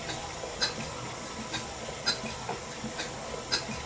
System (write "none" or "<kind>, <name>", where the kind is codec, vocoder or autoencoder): none